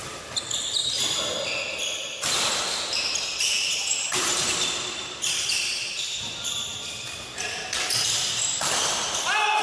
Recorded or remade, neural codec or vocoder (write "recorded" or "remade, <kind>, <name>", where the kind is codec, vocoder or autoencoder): recorded